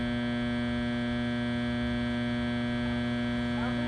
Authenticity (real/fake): real